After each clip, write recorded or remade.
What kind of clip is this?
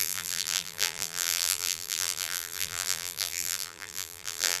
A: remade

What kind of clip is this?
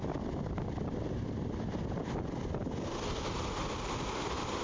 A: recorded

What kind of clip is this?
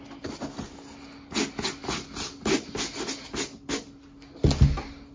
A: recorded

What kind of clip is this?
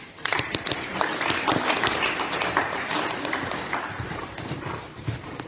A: remade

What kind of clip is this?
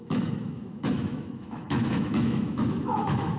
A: remade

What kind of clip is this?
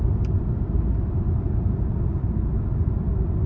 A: recorded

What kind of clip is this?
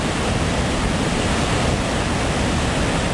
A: recorded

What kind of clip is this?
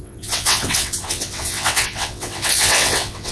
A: remade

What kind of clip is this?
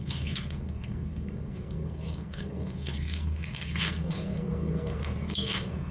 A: remade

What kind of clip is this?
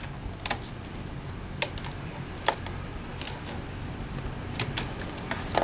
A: recorded